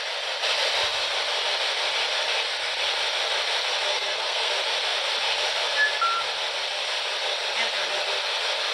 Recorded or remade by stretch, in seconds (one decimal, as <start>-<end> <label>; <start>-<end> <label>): 0.0-3.9 recorded; 3.9-4.5 remade; 4.5-8.7 recorded